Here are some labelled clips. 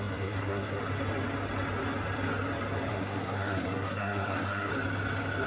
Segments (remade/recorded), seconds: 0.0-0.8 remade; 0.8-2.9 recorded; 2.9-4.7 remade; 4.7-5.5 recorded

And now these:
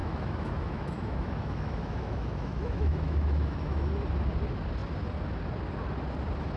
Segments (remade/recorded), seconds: 0.0-3.9 remade; 3.9-6.6 recorded